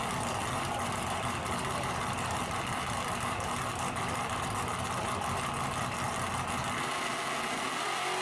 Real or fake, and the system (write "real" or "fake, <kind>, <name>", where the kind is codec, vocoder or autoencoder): real